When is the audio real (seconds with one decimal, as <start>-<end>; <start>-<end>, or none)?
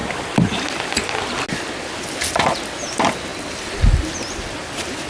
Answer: 0.0-5.1